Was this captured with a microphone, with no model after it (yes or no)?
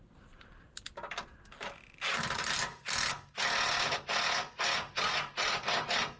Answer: yes